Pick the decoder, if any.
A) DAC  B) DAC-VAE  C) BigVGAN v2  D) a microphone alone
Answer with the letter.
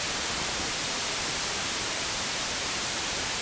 C